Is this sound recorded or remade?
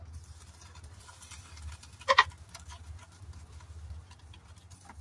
recorded